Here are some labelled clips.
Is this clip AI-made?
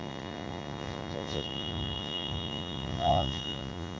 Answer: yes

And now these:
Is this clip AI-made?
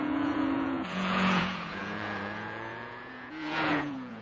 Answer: yes